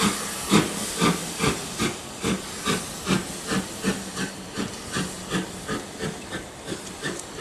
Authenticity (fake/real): real